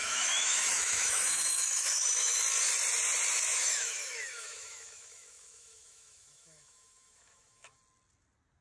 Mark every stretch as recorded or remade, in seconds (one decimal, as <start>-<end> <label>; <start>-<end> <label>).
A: 0.0-2.4 remade; 2.4-3.5 recorded; 3.5-7.8 remade; 7.8-8.6 recorded